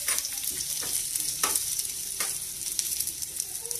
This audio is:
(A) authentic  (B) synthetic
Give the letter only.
B